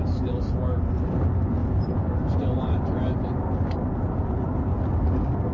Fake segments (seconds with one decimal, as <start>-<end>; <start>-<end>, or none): 1.6-4.9